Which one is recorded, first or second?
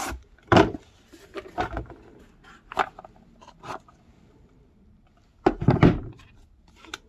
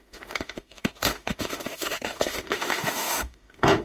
first